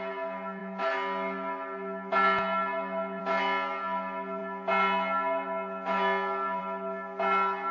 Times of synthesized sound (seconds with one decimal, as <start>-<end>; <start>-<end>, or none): none